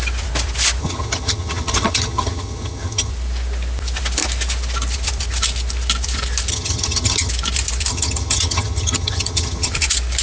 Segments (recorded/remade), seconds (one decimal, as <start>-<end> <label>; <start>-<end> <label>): 0.0-0.8 recorded; 0.8-3.1 remade; 3.1-6.5 recorded; 6.5-7.3 remade; 7.3-7.9 recorded; 7.9-9.7 remade; 9.7-10.2 recorded